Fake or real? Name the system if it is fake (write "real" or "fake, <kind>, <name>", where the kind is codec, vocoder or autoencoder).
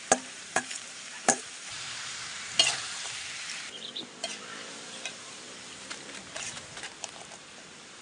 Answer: fake, vocoder, BigVGAN v2